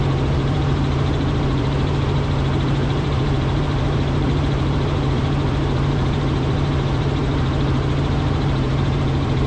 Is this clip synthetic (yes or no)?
yes